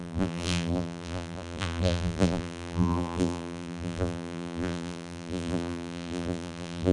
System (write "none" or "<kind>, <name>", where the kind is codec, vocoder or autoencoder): vocoder, BigVGAN v2